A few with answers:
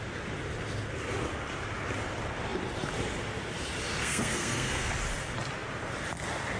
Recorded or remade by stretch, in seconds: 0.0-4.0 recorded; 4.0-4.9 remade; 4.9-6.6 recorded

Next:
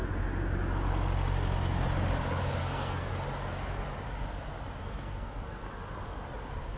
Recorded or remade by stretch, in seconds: 0.0-2.6 recorded; 2.6-3.1 remade; 3.1-4.8 recorded; 4.8-5.7 remade; 5.7-6.8 recorded

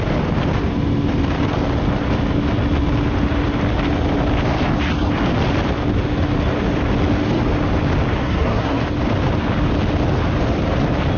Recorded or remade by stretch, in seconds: 0.0-8.2 recorded; 8.2-8.8 remade; 8.8-11.2 recorded

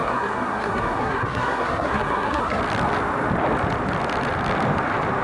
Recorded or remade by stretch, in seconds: 0.0-2.6 remade; 2.6-5.2 recorded